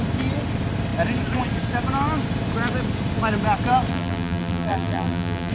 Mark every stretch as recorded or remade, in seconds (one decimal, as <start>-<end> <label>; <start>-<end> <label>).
0.0-3.9 recorded; 3.9-5.5 remade